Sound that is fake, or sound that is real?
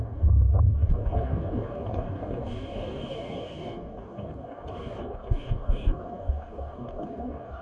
fake